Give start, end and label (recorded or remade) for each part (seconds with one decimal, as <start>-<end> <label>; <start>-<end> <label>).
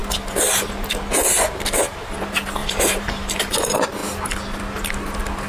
0.0-2.6 recorded; 2.6-3.4 remade; 3.4-5.5 recorded